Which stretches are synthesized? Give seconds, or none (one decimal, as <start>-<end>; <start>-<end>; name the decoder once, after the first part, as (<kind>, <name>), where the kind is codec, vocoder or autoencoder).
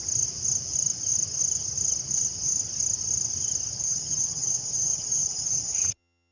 3.8-6.3 (vocoder, HiFi-GAN)